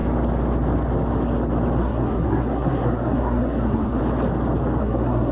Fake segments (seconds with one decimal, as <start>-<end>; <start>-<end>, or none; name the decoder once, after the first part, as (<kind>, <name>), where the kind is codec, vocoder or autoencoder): 1.8-4.0 (codec, SNAC); 4.8-5.3